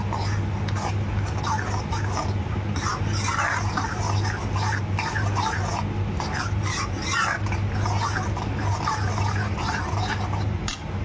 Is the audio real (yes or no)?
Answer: yes